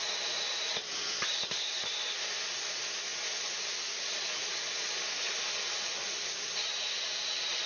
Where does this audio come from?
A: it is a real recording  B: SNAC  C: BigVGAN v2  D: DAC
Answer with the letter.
A